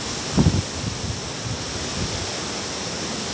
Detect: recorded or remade recorded